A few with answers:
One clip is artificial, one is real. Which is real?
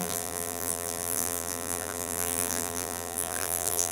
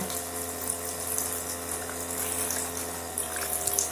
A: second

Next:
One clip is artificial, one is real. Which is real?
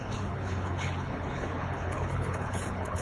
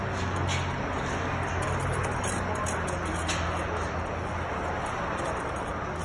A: second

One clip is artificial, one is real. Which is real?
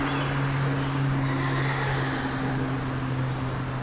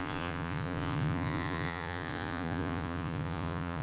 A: first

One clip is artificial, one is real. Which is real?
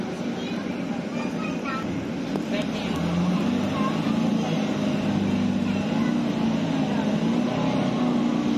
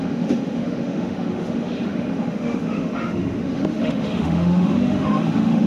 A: first